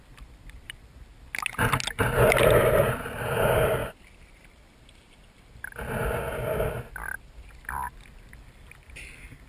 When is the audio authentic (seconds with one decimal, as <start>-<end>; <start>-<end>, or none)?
1.1-2.7; 3.8-8.3